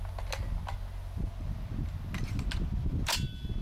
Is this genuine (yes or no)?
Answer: yes